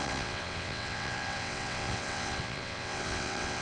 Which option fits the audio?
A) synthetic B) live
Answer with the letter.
A